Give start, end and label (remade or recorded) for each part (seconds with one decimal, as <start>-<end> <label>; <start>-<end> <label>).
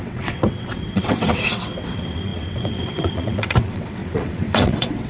0.0-5.1 remade